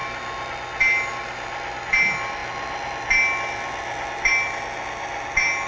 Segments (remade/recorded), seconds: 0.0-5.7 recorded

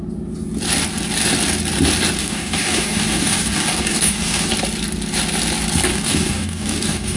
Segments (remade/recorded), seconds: 0.0-2.2 recorded; 2.2-4.5 remade; 4.5-5.9 recorded; 5.9-7.2 remade

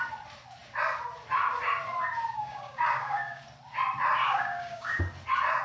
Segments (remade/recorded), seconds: 0.0-2.3 recorded; 2.3-3.4 remade; 3.4-4.2 recorded; 4.2-5.0 remade; 5.0-5.6 recorded

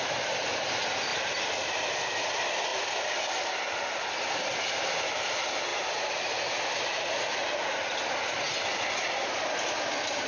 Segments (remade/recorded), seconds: 0.0-10.3 recorded

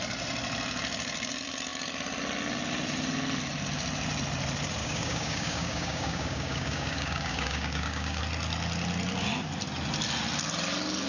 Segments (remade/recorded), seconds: 0.0-4.8 recorded; 4.8-8.2 remade; 8.2-11.1 recorded